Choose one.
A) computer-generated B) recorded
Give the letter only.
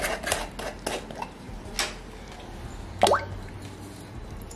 B